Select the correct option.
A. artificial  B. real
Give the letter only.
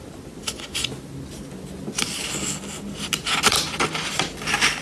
B